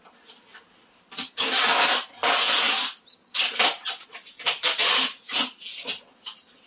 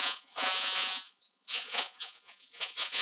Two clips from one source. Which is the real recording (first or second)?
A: first